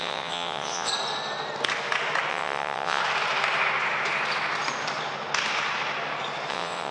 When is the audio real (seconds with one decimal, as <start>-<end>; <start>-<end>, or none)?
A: 0.9-2.3; 3.0-6.5